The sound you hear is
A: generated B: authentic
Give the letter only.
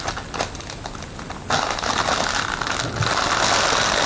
B